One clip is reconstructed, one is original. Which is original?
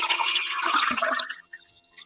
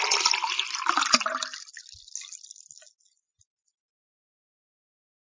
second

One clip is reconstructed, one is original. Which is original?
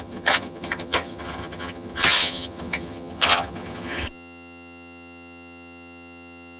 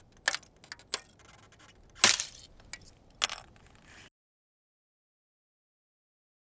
second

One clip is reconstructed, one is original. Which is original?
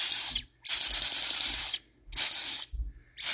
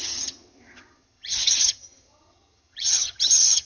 first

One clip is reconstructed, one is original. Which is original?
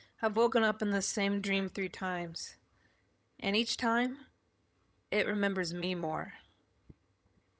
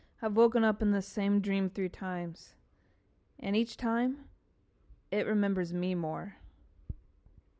second